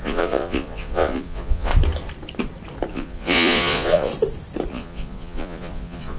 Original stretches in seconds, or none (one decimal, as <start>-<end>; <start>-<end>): 1.7-2.9; 4.1-4.7